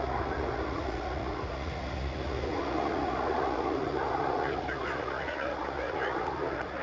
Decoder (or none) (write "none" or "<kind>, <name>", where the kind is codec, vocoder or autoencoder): vocoder, Vocos